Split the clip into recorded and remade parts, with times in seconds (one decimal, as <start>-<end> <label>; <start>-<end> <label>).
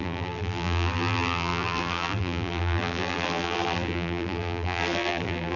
0.0-5.6 remade